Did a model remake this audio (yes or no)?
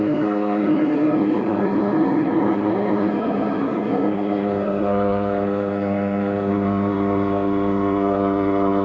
yes